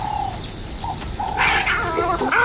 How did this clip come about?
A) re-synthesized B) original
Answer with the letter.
B